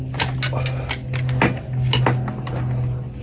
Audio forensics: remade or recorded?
recorded